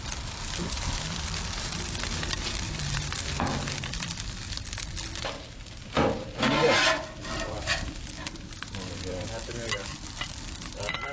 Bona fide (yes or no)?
no